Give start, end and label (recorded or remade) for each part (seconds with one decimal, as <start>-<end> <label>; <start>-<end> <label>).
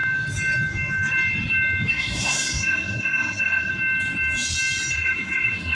0.0-1.9 recorded; 1.9-3.7 remade; 3.7-4.9 recorded; 4.9-5.7 remade